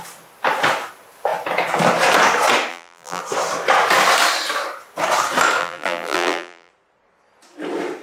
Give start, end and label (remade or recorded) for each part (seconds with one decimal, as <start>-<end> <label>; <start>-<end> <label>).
0.0-2.7 recorded; 2.7-3.2 remade; 3.2-5.6 recorded; 5.6-6.7 remade; 6.7-8.0 recorded